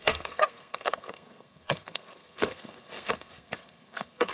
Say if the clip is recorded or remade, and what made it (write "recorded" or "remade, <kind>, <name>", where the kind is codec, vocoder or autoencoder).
remade, codec, SNAC